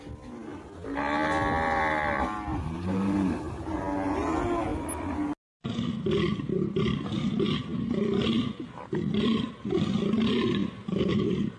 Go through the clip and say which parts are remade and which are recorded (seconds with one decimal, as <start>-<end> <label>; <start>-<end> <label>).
0.0-2.5 recorded; 2.5-3.7 remade; 3.7-10.6 recorded; 10.6-11.6 remade